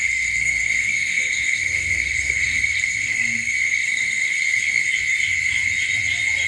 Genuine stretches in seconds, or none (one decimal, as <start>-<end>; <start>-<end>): 4.8-6.5